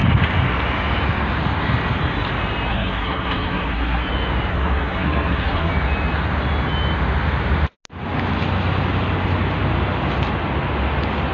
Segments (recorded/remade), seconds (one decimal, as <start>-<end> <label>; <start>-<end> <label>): 0.0-2.7 recorded; 2.7-4.1 remade; 4.1-4.5 recorded; 4.5-5.7 remade; 5.7-11.3 recorded